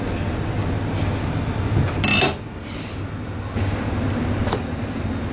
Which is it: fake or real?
real